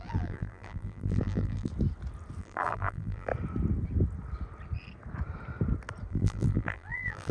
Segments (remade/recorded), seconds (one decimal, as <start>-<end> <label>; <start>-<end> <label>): 0.0-1.7 remade; 1.7-2.4 recorded; 2.4-3.3 remade; 3.3-6.1 recorded; 6.1-7.3 remade